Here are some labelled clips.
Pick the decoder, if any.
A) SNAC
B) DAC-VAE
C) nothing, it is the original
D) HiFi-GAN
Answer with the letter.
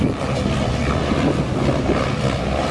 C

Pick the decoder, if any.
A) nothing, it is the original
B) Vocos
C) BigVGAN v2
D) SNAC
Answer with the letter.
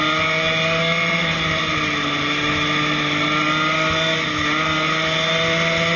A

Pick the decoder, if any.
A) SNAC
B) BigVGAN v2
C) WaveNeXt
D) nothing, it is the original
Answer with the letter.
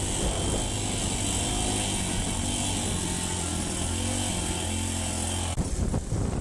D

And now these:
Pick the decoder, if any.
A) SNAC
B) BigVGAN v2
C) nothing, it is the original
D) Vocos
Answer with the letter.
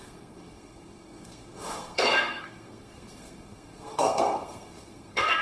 A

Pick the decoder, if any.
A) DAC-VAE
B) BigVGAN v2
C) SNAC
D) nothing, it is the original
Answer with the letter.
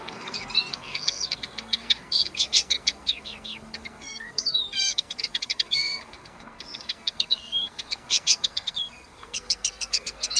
C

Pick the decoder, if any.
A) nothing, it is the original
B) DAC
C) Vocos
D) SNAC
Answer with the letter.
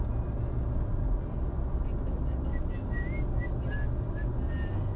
A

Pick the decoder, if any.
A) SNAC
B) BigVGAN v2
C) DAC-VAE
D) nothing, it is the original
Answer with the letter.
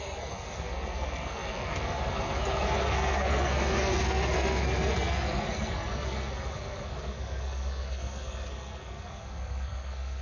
A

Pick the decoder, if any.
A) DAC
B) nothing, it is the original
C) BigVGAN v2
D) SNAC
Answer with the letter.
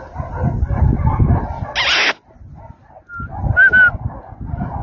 B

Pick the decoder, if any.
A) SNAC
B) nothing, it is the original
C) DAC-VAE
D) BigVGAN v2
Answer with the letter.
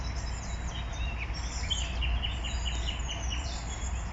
B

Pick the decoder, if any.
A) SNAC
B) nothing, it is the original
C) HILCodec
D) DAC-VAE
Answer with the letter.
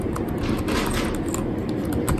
B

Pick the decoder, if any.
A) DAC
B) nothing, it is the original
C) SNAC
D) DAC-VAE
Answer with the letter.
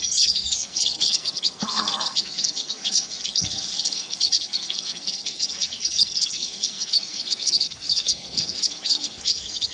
C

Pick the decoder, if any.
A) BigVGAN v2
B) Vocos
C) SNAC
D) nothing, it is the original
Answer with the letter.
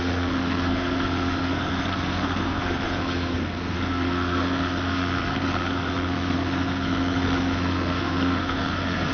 C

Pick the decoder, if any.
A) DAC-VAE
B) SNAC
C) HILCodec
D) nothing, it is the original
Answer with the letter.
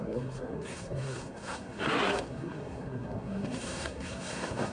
B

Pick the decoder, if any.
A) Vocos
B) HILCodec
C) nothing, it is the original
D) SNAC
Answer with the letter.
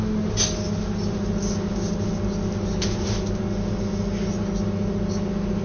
C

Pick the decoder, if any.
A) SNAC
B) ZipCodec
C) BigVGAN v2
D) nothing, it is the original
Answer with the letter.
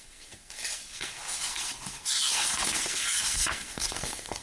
A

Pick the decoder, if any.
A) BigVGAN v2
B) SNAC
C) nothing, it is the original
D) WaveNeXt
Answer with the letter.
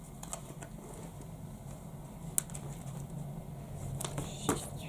C